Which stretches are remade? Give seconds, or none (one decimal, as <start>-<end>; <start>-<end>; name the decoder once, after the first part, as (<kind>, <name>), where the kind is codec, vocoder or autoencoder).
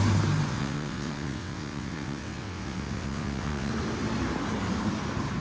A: 0.5-3.7 (vocoder, WaveNeXt)